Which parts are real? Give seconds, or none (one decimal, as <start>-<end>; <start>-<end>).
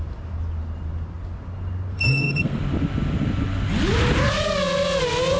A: 0.0-1.9; 2.6-5.4